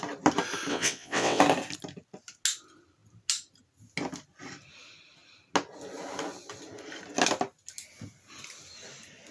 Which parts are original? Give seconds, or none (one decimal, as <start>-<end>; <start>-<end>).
0.0-0.7; 1.4-9.3